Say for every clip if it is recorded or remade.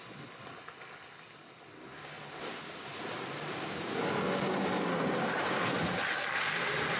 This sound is recorded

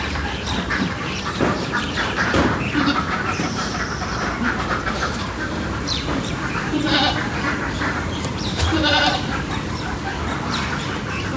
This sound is remade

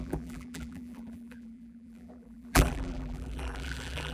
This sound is remade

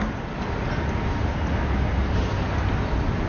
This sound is recorded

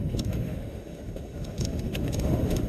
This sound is remade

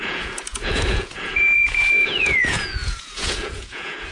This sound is remade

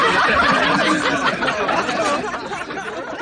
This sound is recorded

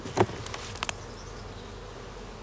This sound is recorded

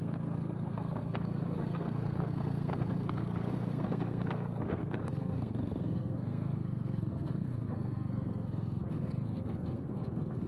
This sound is remade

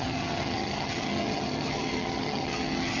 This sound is remade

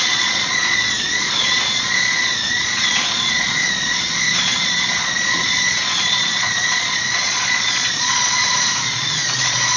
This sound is remade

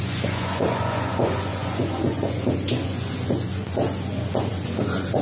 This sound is remade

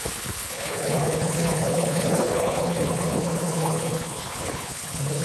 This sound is remade